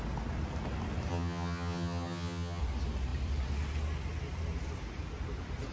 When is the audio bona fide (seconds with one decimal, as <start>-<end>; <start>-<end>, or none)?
0.0-1.1; 2.6-5.7